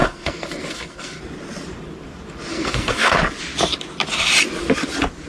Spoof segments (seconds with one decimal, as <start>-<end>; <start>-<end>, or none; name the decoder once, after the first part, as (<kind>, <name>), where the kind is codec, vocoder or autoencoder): 0.0-1.2 (codec, SNAC); 2.5-3.2